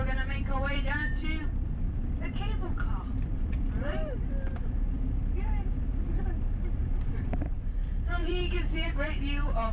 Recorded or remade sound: remade